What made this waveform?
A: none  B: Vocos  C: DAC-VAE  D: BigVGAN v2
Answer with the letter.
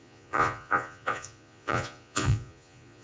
B